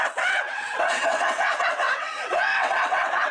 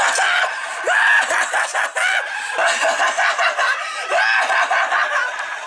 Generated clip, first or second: first